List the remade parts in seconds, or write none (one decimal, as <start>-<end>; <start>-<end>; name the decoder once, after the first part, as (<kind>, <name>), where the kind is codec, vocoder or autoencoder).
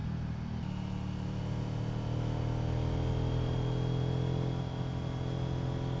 none